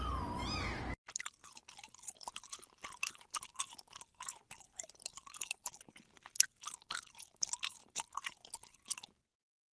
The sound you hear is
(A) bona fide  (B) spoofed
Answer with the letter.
A